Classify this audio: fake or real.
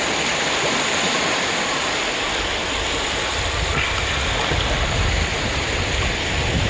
real